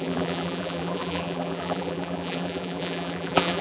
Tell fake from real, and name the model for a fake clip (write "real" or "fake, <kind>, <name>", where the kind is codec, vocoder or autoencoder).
fake, vocoder, BigVGAN v2